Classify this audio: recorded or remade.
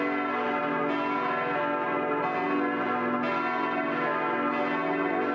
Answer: recorded